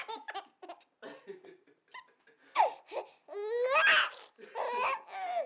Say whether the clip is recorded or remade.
recorded